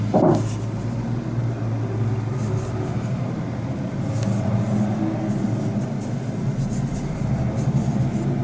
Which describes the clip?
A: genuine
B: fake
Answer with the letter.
A